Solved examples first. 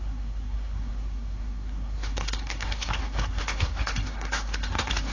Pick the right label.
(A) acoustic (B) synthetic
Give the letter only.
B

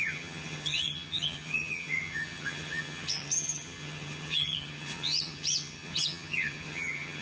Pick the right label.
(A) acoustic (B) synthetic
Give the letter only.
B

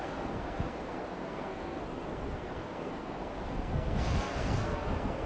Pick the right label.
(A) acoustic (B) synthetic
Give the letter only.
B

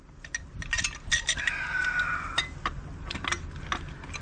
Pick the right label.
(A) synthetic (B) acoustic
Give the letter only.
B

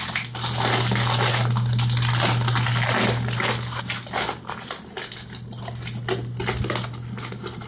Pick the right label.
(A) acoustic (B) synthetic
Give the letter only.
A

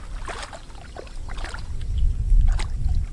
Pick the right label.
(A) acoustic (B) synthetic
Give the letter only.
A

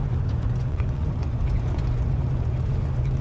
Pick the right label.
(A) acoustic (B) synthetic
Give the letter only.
B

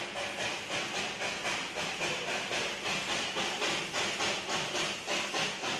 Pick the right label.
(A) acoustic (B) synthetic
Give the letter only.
A